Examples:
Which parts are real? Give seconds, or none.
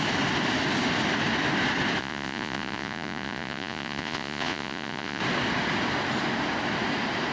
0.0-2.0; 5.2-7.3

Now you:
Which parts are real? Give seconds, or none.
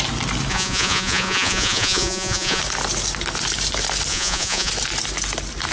0.0-0.5; 2.6-4.1; 4.7-5.7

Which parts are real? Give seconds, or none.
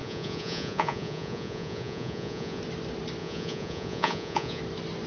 2.6-3.2; 4.6-5.1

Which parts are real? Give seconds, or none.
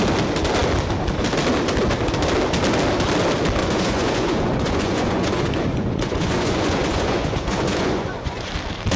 0.0-3.6; 8.5-9.0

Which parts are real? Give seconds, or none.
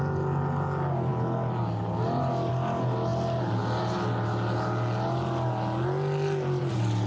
0.0-7.1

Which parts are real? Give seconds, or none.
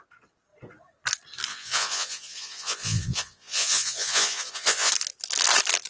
0.0-1.5; 4.9-5.9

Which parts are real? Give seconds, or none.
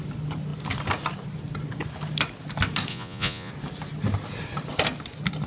0.0-2.9; 3.5-5.5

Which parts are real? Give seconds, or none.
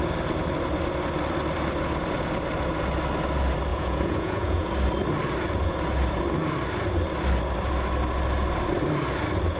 0.0-3.7; 4.7-9.6